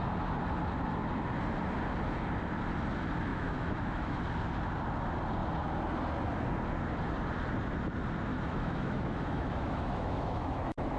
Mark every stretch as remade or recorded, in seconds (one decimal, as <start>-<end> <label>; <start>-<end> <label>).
0.0-3.3 recorded; 3.3-4.2 remade; 4.2-8.3 recorded; 8.3-11.0 remade